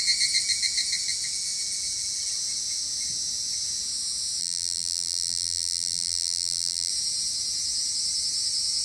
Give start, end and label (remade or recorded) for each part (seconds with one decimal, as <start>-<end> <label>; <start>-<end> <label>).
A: 0.0-4.4 recorded; 4.4-6.9 remade; 6.9-8.8 recorded